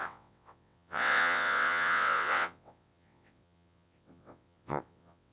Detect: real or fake fake